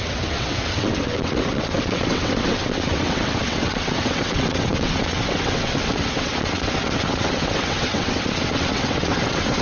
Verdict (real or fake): fake